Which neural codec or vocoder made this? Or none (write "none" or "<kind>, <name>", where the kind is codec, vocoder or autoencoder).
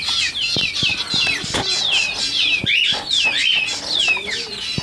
none